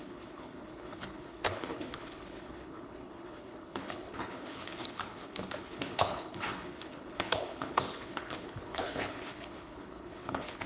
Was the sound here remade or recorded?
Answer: remade